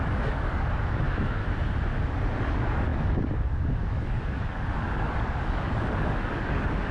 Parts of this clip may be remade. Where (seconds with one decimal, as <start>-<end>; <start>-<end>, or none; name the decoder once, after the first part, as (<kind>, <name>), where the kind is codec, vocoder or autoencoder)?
0.0-1.4 (codec, DAC); 2.4-6.9